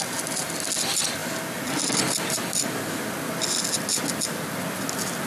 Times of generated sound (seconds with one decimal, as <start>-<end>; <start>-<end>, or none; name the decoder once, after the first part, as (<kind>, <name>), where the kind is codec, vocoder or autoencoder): none